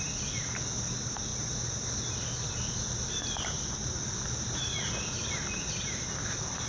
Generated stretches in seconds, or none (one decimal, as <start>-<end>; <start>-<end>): none